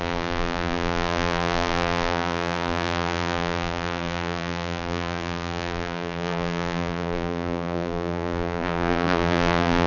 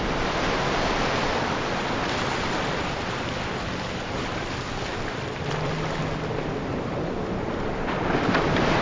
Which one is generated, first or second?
first